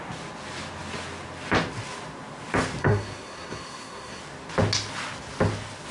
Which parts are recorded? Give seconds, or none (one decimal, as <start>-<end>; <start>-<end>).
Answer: 0.0-2.8; 4.2-5.9